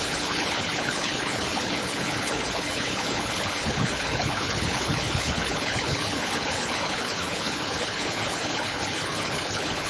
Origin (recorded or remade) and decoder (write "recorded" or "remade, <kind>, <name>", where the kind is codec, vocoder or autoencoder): remade, codec, HILCodec